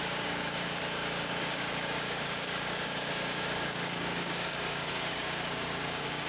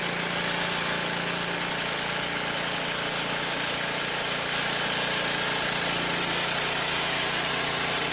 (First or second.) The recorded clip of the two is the second